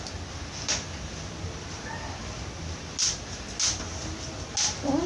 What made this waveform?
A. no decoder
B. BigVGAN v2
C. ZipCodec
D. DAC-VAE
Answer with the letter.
A